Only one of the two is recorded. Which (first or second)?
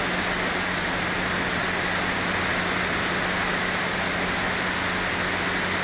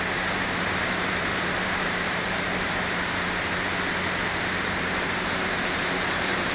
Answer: first